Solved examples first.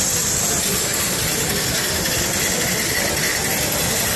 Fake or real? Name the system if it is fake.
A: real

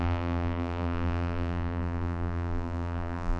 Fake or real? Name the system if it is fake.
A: fake, vocoder, BigVGAN v2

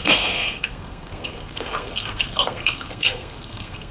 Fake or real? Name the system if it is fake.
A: fake, codec, SNAC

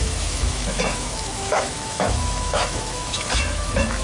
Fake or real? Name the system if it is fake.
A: fake, autoencoder, DAC-VAE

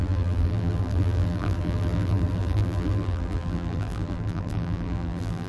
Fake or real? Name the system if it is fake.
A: fake, vocoder, BigVGAN v2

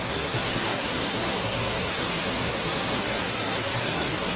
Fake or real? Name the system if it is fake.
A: fake, codec, SNAC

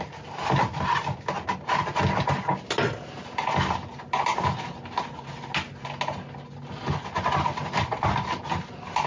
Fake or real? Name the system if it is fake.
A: real